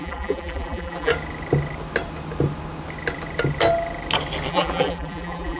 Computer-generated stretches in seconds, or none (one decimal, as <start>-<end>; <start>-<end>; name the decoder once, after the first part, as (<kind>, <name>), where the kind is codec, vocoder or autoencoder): 0.0-1.1 (vocoder, BigVGAN v2); 4.5-5.6